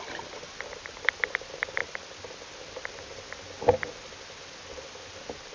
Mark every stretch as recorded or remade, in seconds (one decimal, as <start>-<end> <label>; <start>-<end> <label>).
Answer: 0.0-5.5 recorded